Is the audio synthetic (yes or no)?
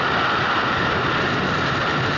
no